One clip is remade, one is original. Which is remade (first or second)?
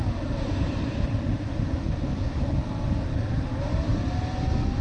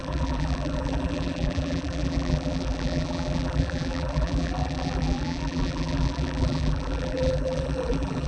second